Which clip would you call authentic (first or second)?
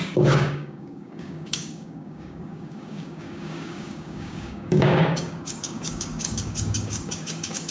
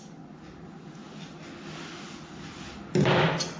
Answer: second